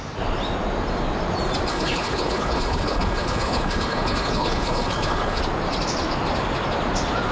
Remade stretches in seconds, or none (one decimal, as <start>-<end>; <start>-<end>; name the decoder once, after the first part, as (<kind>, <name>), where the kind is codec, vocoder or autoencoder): 1.7-5.4 (codec, HILCodec)